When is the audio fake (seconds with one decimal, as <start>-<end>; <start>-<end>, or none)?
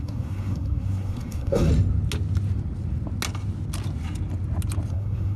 0.0-1.7; 4.9-5.4